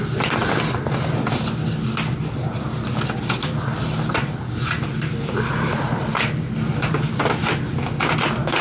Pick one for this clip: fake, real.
real